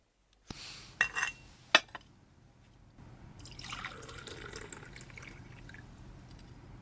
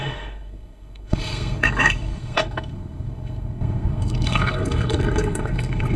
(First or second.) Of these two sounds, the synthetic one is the second